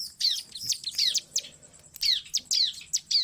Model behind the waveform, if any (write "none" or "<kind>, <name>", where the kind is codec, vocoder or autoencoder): none